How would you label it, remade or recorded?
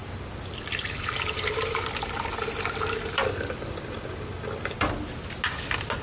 recorded